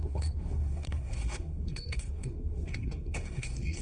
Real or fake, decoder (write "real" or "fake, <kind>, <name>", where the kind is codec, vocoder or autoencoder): fake, codec, SNAC